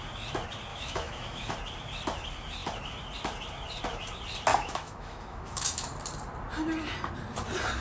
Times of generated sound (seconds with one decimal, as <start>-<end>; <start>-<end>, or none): 0.7-1.5; 4.5-5.9